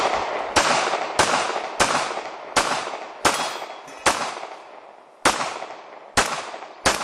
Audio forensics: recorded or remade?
recorded